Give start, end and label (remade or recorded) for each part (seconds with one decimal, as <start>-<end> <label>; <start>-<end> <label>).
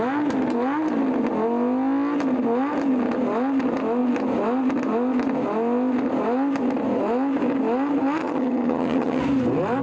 0.0-8.2 recorded; 8.2-9.2 remade; 9.2-9.8 recorded